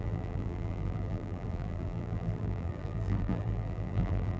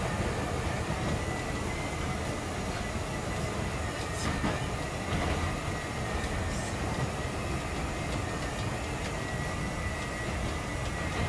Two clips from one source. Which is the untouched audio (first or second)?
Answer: second